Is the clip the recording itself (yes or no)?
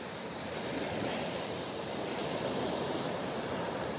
no